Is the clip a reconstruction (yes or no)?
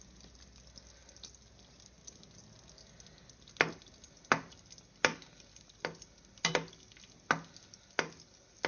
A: no